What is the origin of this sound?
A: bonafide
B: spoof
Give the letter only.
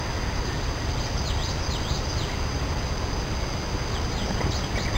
A